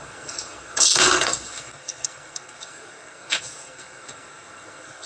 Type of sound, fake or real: fake